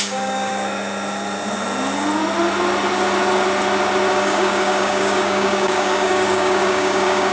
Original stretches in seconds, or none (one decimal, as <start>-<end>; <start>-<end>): 0.5-4.1